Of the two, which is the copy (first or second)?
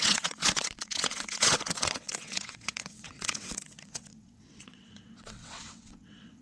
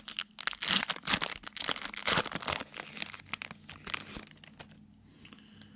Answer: first